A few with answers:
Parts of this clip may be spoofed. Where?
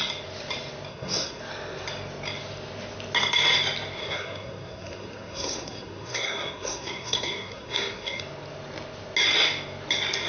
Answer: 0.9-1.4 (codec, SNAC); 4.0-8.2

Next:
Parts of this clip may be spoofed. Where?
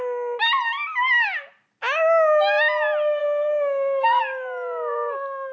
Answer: 3.2-4.2 (codec, SNAC)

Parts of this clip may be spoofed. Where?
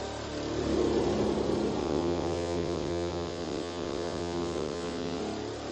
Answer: 1.8-5.2 (vocoder, WaveNeXt)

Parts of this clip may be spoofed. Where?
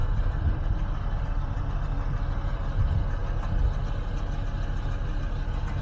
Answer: 0.0-1.7 (vocoder, BigVGAN v2)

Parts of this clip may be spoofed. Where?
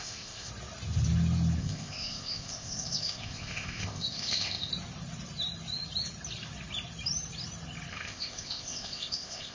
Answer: 0.0-0.5 (codec, ZipCodec); 1.6-4.7; 7.9-9.5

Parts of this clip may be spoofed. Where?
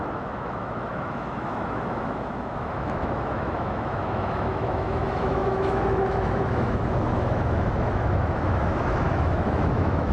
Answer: 0.0-10.1 (autoencoder, DAC-VAE)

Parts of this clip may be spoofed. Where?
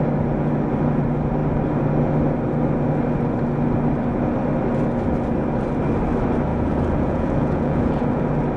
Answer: 6.5-8.2 (vocoder, Vocos)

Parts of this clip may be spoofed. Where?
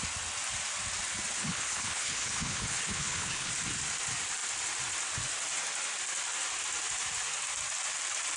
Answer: 1.4-3.5 (codec, HILCodec)